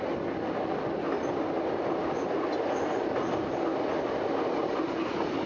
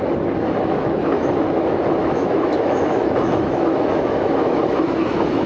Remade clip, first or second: second